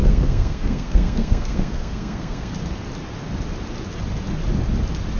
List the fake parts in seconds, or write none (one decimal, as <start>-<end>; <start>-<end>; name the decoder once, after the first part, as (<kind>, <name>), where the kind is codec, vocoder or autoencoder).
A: 0.0-2.5 (codec, SNAC)